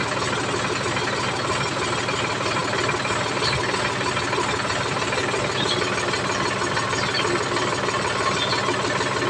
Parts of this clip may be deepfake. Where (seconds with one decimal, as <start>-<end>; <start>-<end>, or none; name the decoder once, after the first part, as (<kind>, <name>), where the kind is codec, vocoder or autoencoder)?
none